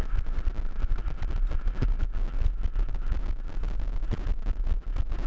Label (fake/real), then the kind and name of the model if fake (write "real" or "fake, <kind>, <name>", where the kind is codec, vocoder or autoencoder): real